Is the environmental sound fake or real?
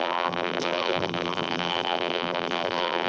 fake